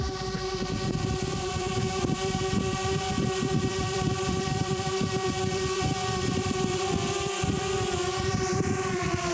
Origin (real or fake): fake